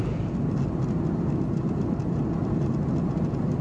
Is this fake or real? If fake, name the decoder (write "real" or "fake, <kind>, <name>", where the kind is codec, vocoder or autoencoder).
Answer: real